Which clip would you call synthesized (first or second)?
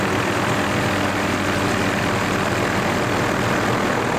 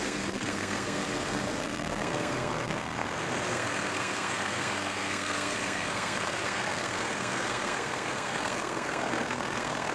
second